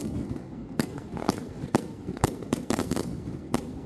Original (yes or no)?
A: no